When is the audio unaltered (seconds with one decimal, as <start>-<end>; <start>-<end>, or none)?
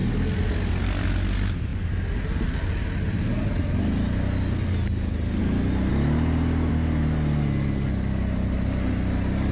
0.0-9.5